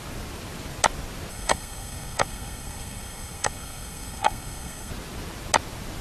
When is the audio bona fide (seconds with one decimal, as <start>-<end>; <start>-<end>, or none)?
0.0-1.3; 4.9-6.0

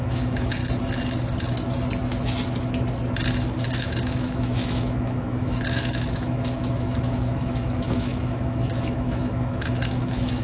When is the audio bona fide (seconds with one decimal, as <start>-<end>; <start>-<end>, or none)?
0.6-3.6

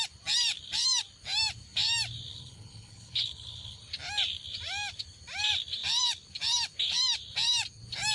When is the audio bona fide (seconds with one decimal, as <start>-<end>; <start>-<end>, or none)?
0.0-2.3; 3.8-8.1

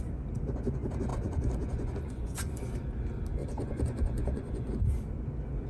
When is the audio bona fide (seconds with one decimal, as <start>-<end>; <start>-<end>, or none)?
0.0-1.1; 2.7-3.4; 4.7-5.7

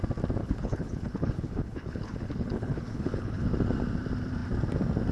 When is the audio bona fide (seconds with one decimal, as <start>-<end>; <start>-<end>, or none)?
0.0-0.4; 3.5-5.1

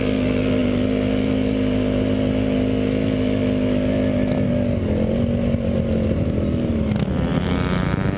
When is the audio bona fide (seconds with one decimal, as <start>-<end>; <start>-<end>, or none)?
0.0-8.2

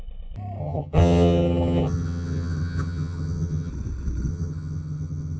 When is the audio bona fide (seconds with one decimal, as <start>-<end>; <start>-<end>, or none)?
0.0-0.6; 3.7-4.3

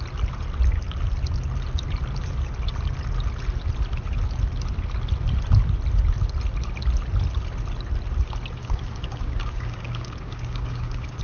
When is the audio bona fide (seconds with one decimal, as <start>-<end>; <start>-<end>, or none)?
0.0-8.6